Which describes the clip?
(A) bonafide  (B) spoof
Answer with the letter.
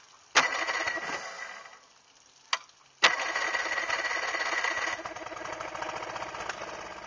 A